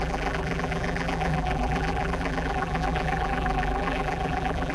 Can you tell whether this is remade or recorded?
remade